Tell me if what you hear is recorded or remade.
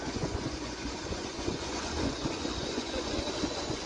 remade